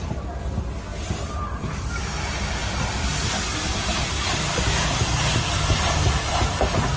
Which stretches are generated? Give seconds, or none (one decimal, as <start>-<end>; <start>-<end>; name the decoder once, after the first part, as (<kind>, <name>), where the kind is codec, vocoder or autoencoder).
0.9-2.0 (vocoder, BigVGAN v2); 2.6-5.3